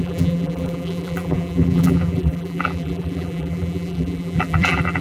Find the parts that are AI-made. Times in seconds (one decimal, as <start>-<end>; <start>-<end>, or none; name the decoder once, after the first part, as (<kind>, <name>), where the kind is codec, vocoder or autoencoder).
0.0-5.0 (vocoder, BigVGAN v2)